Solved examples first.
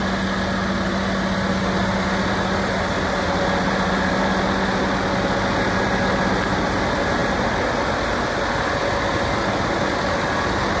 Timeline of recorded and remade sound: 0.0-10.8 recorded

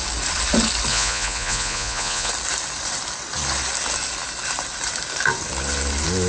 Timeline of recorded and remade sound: 0.0-0.9 recorded; 0.9-2.3 remade; 2.3-6.3 recorded

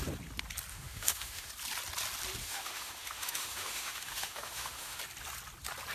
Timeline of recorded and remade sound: 0.0-0.7 recorded; 0.7-1.5 remade; 1.5-2.4 recorded; 2.4-5.0 remade; 5.0-5.9 recorded

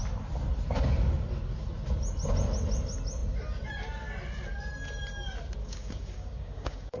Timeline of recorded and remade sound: 0.0-5.6 recorded; 5.6-7.0 remade

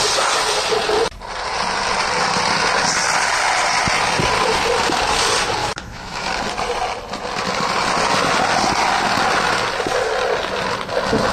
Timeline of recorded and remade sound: 0.0-5.6 recorded; 5.6-6.3 remade; 6.3-11.3 recorded

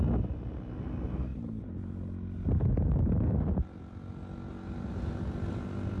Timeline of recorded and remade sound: 0.0-6.0 recorded

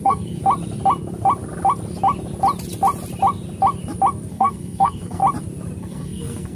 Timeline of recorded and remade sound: 0.0-0.4 remade; 0.4-4.3 recorded; 4.3-5.2 remade; 5.2-5.8 recorded; 5.8-6.5 remade